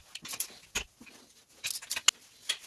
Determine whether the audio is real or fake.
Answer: real